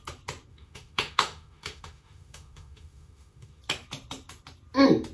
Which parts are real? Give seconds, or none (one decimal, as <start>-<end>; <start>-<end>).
0.0-0.5; 3.6-5.1